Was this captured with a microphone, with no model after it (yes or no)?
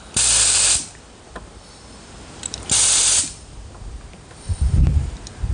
yes